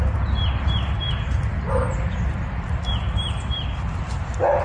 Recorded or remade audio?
recorded